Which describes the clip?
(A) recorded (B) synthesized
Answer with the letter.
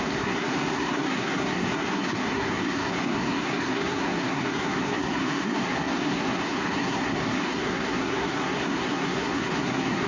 B